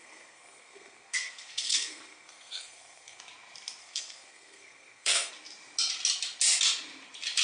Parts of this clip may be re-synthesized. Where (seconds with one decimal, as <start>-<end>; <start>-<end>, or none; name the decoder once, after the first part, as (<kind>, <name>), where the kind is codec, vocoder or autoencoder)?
0.0-3.2 (codec, SNAC); 3.8-5.3